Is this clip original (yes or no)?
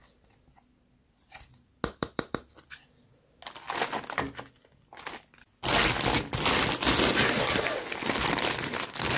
yes